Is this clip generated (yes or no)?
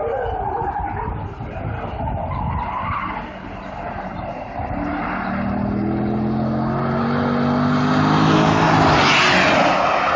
no